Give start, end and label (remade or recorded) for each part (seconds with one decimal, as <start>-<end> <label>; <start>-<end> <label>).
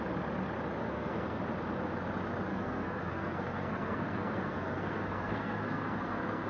0.0-0.8 recorded; 0.8-1.4 remade; 1.4-2.5 recorded; 2.5-6.5 remade